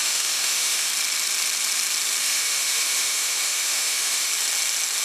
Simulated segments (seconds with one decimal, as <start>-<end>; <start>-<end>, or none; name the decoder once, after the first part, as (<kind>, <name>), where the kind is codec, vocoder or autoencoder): 0.0-0.9 (autoencoder, DAC-VAE); 2.2-4.3